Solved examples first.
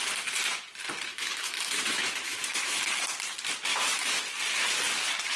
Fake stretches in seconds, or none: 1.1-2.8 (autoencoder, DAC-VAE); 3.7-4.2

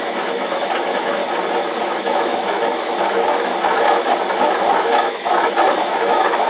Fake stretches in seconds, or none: 0.0-1.2 (autoencoder, DAC-VAE); 1.8-3.5; 4.6-6.5

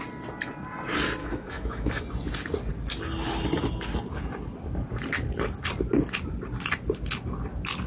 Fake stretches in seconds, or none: 1.2-2.0 (autoencoder, DAC-VAE)